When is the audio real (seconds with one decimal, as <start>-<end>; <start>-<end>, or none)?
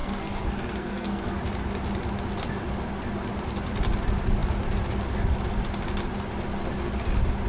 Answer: 1.4-7.5